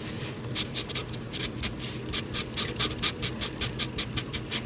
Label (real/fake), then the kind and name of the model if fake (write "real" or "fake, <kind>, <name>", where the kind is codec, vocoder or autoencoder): fake, vocoder, BigVGAN v2